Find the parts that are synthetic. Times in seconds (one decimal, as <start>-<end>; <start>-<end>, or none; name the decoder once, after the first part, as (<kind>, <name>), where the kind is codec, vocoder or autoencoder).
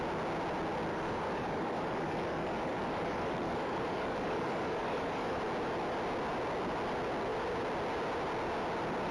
0.9-5.4 (codec, DAC)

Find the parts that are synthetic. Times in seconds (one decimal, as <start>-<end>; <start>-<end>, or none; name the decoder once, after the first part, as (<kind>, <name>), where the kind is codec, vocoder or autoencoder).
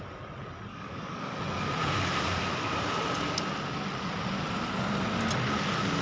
0.7-1.4 (codec, DAC)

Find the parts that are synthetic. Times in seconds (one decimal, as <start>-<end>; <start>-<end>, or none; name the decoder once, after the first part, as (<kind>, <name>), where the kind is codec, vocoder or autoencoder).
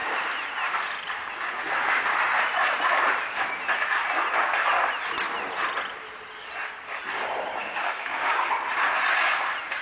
7.6-8.5 (codec, DAC)